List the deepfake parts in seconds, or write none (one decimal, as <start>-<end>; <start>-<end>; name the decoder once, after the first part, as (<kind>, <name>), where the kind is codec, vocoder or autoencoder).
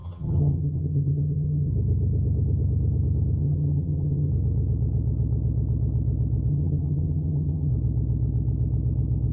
0.0-1.7 (vocoder, HiFi-GAN); 3.4-4.3; 6.5-7.7